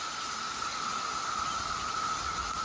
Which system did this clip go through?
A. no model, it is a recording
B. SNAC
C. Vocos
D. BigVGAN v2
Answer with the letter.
A